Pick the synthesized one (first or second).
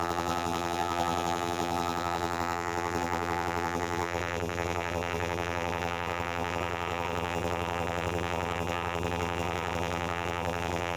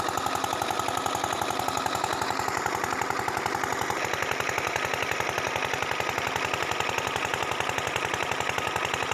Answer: first